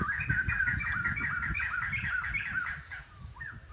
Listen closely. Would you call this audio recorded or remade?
recorded